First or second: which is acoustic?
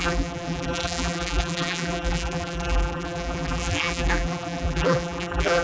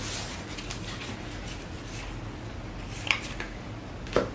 second